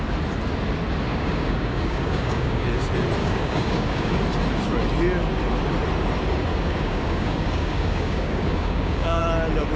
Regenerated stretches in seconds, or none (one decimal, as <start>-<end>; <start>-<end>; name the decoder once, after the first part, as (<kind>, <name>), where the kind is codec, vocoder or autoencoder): 1.1-2.7 (codec, DAC); 3.2-4.2; 6.5-9.2